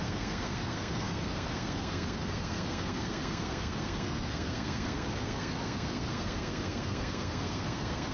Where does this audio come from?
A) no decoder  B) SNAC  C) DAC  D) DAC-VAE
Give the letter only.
B